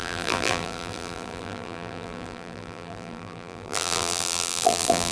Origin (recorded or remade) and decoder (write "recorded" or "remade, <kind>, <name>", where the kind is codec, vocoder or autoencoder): remade, vocoder, BigVGAN v2